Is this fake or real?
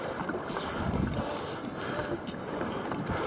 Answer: real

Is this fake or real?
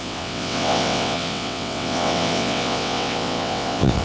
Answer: fake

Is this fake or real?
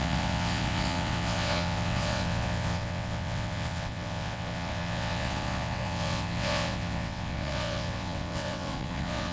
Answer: fake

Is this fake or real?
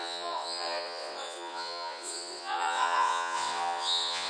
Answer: fake